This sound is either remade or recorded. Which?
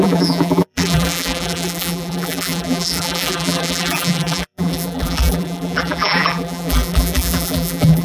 remade